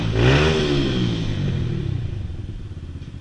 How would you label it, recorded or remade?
recorded